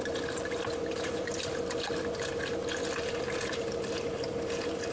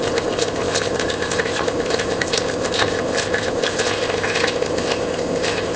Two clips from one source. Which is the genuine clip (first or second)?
first